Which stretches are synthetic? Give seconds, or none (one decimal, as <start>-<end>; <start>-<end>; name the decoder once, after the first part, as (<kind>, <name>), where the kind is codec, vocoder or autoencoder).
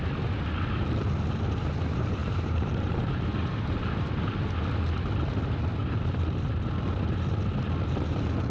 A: 2.2-3.5 (vocoder, BigVGAN v2); 5.7-6.5